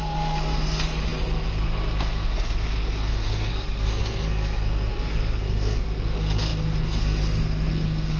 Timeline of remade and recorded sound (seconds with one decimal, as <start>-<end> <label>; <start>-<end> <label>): 0.0-8.2 remade